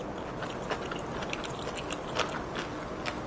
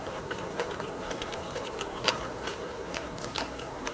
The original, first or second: first